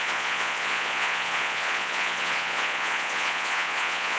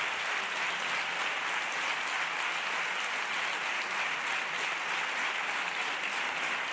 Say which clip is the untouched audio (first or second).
second